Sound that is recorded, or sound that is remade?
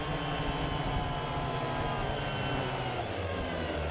recorded